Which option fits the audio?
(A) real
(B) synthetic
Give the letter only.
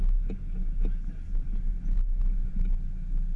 A